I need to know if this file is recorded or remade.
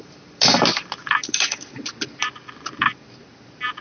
recorded